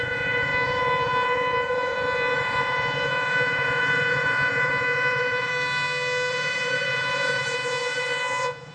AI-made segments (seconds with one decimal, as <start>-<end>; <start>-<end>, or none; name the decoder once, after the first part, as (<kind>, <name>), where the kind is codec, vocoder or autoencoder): 0.0-5.5 (vocoder, Vocos); 6.3-8.7